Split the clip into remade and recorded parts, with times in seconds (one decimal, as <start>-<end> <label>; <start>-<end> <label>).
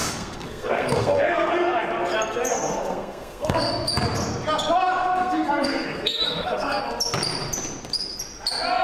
0.0-1.5 remade; 1.5-2.5 recorded; 2.5-3.7 remade; 3.7-5.2 recorded; 5.2-6.8 remade; 6.8-8.8 recorded